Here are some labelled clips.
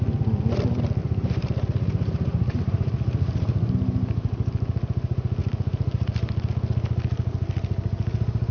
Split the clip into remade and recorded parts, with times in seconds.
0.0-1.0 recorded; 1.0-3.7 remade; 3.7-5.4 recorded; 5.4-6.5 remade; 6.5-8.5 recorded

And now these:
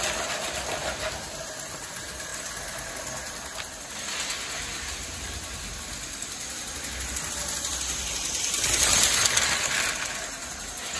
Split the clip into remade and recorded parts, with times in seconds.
0.0-2.3 recorded; 2.3-2.9 remade; 2.9-7.4 recorded; 7.4-8.8 remade; 8.8-11.0 recorded

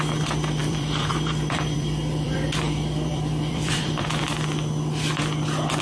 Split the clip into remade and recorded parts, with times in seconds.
0.0-0.6 recorded; 0.6-4.1 remade; 4.1-5.8 recorded

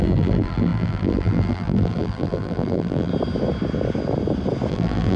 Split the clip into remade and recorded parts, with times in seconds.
0.0-3.1 remade; 3.1-4.7 recorded; 4.7-5.2 remade

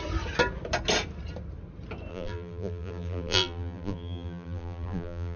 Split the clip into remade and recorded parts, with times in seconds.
0.0-2.1 recorded; 2.1-5.4 remade

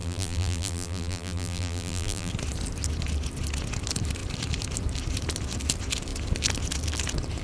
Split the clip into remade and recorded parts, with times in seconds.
0.0-2.3 remade; 2.3-7.4 recorded